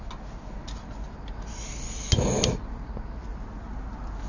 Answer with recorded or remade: recorded